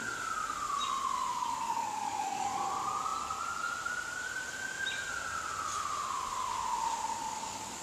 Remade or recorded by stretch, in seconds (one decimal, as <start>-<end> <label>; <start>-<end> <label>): 0.0-1.3 recorded; 1.3-2.7 remade; 2.7-7.2 recorded; 7.2-7.8 remade